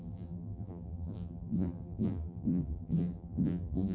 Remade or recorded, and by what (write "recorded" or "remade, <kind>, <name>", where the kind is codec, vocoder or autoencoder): remade, vocoder, BigVGAN v2